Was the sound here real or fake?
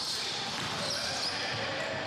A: real